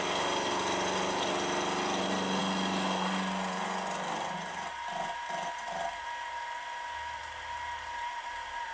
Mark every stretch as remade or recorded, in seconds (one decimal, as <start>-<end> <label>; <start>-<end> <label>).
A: 0.0-8.7 recorded

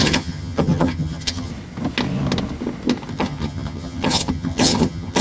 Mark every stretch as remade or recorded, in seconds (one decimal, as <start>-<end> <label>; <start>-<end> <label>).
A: 0.0-1.5 remade; 1.5-3.1 recorded; 3.1-5.2 remade

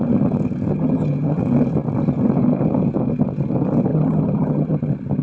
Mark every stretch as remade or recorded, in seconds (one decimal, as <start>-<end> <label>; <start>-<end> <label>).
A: 0.0-0.7 recorded; 0.7-1.4 remade; 1.4-3.9 recorded; 3.9-4.8 remade; 4.8-5.2 recorded

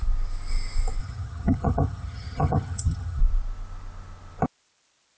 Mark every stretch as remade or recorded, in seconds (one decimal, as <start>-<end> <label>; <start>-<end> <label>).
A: 0.0-1.0 recorded; 1.0-3.2 remade; 3.2-5.2 recorded

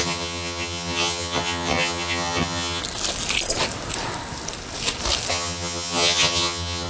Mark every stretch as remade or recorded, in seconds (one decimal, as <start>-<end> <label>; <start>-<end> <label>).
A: 0.0-2.8 remade; 2.8-5.3 recorded; 5.3-6.9 remade

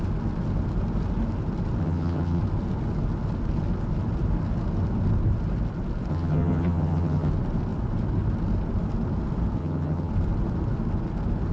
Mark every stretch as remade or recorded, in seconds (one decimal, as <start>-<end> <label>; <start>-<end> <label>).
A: 0.0-1.8 recorded; 1.8-2.4 remade; 2.4-6.1 recorded; 6.1-7.3 remade; 7.3-9.6 recorded; 9.6-10.1 remade; 10.1-11.5 recorded